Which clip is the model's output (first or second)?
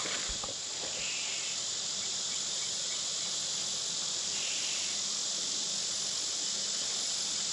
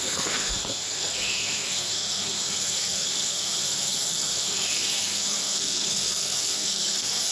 second